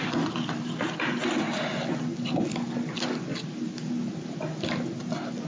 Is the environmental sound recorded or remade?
recorded